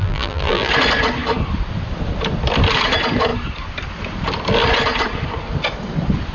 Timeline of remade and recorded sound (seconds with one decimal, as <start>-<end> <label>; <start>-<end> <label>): 0.0-0.7 remade; 0.7-6.3 recorded